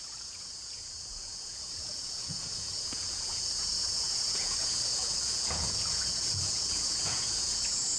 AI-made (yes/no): yes